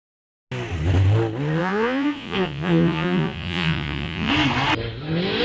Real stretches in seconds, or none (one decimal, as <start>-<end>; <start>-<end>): 0.0-1.6; 4.3-5.4